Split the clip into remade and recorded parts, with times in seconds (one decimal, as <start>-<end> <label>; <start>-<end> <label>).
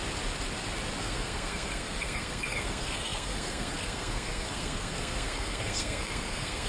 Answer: 0.0-1.0 recorded; 1.0-6.7 remade